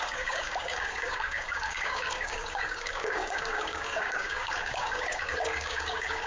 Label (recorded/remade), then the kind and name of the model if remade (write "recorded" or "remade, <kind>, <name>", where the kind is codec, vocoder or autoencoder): remade, codec, DAC